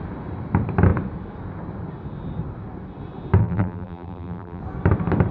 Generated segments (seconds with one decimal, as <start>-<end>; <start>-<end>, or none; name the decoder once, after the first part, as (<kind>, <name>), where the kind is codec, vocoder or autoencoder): 3.4-4.6 (vocoder, BigVGAN v2)